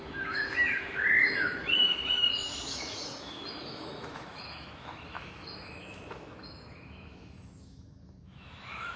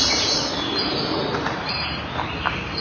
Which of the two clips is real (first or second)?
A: second